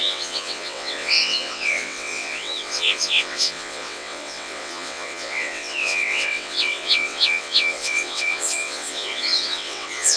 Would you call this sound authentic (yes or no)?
no